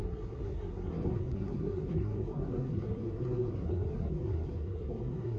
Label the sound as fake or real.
fake